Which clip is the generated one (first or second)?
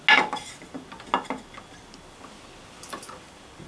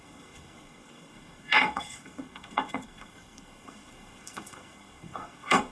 second